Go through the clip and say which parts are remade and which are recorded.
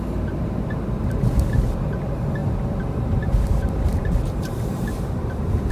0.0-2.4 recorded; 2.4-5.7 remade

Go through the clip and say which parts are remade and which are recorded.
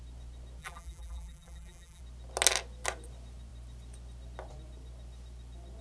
0.0-0.6 recorded; 0.6-2.0 remade; 2.0-5.8 recorded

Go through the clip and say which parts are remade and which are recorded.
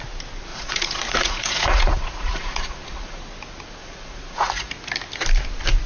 0.0-0.5 recorded; 0.5-3.2 remade; 3.2-3.8 recorded; 3.8-4.7 remade; 4.7-5.9 recorded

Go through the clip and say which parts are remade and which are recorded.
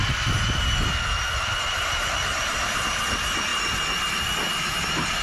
0.0-1.7 recorded; 1.7-3.5 remade; 3.5-4.7 recorded; 4.7-5.2 remade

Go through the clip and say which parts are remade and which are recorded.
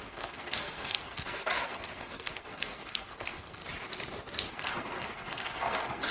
0.0-3.6 remade; 3.6-4.5 recorded; 4.5-6.1 remade